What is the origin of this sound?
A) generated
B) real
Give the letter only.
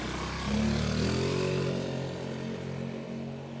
B